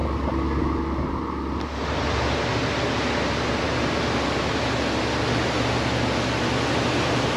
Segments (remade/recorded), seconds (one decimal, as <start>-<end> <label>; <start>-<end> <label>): 0.0-7.4 recorded